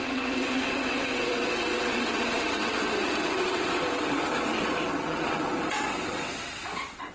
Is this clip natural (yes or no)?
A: no